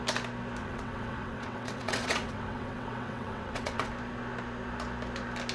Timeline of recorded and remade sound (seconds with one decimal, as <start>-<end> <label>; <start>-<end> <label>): 0.0-0.6 recorded; 0.6-3.9 remade; 3.9-5.5 recorded